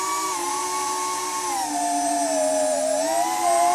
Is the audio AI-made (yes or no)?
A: no